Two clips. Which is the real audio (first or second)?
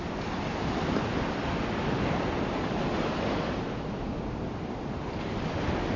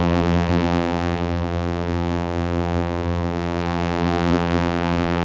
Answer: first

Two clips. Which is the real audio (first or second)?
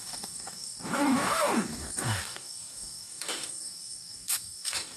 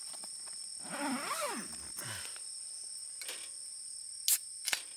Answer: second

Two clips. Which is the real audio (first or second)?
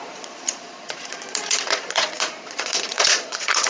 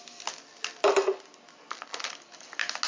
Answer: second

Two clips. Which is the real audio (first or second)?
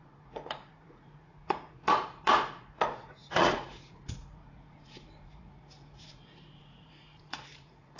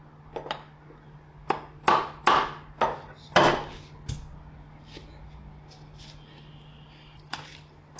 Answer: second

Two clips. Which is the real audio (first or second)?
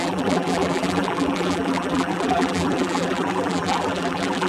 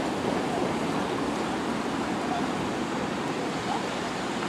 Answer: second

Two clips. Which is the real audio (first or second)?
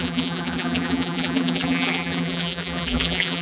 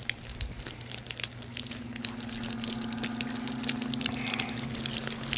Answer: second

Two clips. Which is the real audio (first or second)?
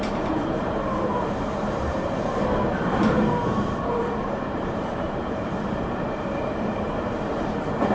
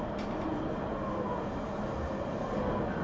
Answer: second